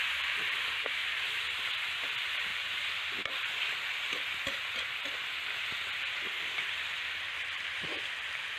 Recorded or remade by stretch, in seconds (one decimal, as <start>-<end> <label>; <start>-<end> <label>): 0.0-1.0 remade; 1.0-2.1 recorded; 2.1-2.5 remade; 2.5-6.4 recorded; 6.4-8.6 remade